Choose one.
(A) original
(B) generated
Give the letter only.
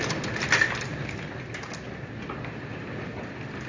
A